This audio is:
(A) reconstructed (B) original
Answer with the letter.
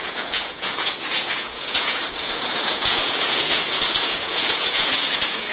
A